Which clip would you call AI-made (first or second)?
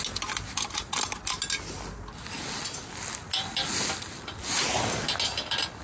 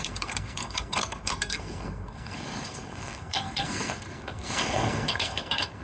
second